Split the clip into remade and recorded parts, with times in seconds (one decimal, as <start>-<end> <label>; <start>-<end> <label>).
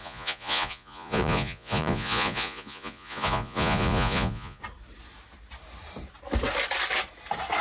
0.0-4.6 remade; 4.6-7.6 recorded